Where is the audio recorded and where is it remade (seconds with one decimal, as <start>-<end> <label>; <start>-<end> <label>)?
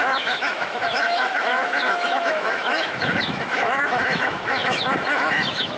0.0-5.8 remade